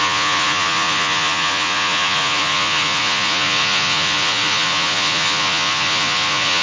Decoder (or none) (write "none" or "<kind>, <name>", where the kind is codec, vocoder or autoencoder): vocoder, Vocos